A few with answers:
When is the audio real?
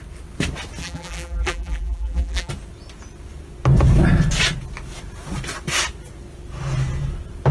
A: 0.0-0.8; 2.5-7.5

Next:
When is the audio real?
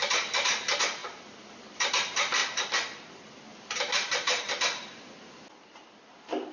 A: 0.0-1.0; 1.9-3.5; 4.5-6.5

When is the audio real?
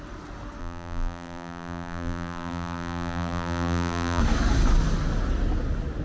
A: 0.0-0.6; 4.2-6.0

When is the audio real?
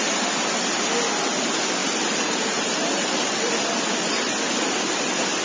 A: 0.0-1.8; 3.5-5.4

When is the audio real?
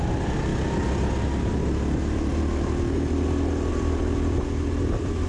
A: 0.5-3.7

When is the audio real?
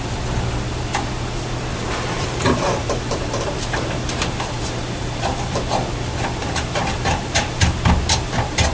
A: 0.0-1.7; 5.5-6.4; 7.7-8.7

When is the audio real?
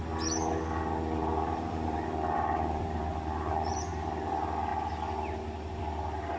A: 0.0-1.2; 4.1-6.4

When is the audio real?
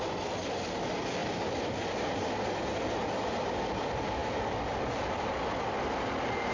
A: 0.0-1.2; 1.8-4.2; 4.8-6.5